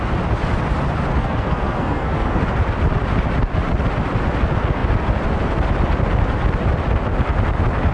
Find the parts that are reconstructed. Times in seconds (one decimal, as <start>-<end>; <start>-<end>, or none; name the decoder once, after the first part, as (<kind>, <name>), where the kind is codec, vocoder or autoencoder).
1.2-2.4 (codec, SNAC)